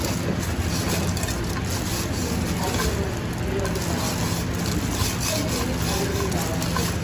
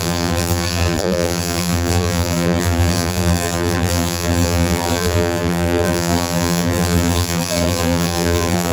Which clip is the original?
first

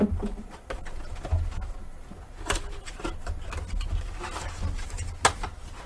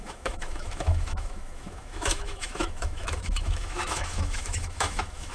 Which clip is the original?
first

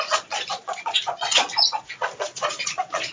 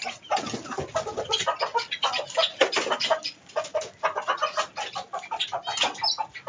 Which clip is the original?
second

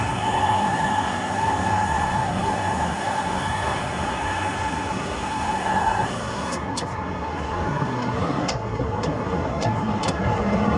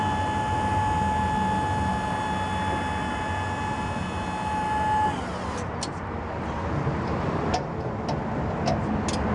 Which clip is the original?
second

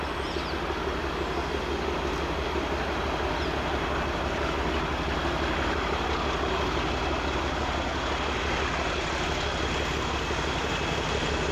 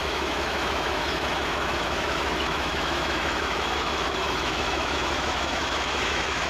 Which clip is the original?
first